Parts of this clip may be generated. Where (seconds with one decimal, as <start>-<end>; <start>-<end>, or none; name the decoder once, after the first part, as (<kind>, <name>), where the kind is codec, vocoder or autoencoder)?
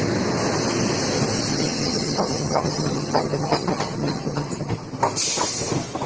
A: 1.5-4.7 (vocoder, HiFi-GAN)